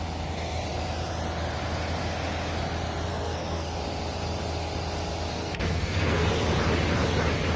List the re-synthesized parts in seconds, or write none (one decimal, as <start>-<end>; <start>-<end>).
3.1-3.8; 5.3-6.3